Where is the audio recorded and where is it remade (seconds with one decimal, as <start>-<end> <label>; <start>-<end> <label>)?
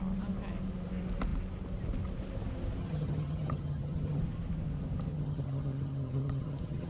0.0-2.8 recorded; 2.8-4.2 remade; 4.2-5.1 recorded; 5.1-6.9 remade